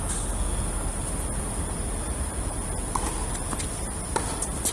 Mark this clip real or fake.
real